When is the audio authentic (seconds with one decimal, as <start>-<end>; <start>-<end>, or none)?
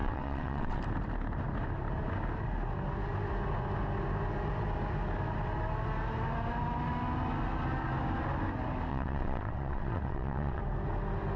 0.8-8.9; 10.6-11.4